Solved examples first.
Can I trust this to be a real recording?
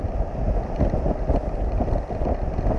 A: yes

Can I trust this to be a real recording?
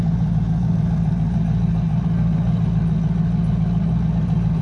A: yes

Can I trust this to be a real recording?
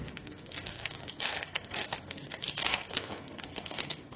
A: no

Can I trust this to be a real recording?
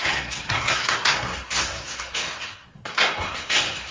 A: no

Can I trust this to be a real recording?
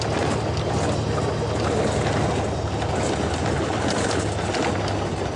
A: yes